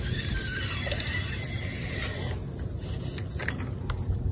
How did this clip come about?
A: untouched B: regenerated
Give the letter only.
A